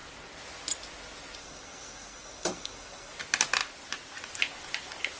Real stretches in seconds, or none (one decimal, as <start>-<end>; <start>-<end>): 0.0-1.4; 3.1-5.2